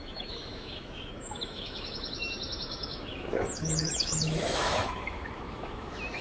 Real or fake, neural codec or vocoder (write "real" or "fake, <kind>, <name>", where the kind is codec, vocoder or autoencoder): fake, autoencoder, DAC-VAE